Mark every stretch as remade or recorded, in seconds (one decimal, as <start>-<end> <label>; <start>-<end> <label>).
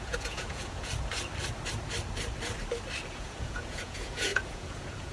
0.0-0.9 remade; 0.9-3.1 recorded; 3.1-5.1 remade